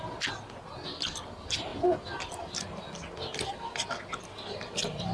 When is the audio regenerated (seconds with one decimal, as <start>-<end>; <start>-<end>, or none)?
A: none

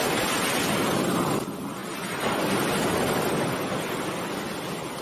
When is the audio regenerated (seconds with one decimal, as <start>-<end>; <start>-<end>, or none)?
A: 1.8-4.0

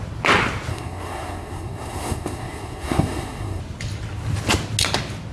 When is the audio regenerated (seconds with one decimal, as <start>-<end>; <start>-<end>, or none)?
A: 0.7-3.6

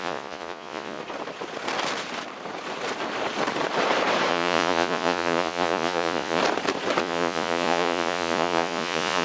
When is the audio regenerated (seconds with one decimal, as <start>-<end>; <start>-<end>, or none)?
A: 0.0-1.0; 4.3-6.4; 7.0-9.2

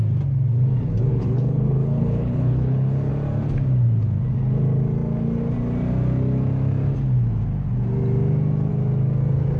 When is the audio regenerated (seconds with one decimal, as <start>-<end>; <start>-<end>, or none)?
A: 1.1-3.1

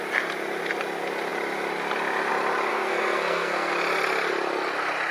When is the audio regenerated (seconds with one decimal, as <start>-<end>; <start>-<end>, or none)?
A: 2.7-3.7

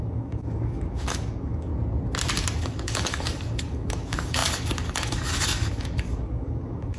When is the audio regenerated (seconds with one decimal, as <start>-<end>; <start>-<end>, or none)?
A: 0.0-1.7; 2.6-7.0